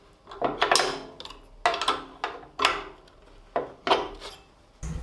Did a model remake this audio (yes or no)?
no